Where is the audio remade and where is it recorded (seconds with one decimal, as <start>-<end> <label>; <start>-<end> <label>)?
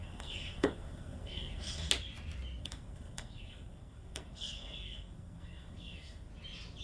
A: 0.0-1.9 remade; 1.9-2.6 recorded; 2.6-6.3 remade; 6.3-6.8 recorded